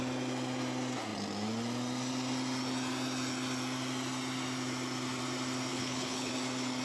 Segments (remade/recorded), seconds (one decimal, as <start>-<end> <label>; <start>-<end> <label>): 0.0-5.7 recorded; 5.7-6.3 remade; 6.3-6.8 recorded